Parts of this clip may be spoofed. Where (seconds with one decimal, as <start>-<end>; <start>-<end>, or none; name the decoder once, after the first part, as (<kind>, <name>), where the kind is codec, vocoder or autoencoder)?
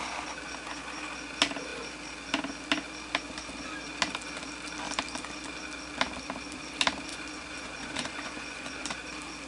7.1-8.8 (vocoder, Vocos)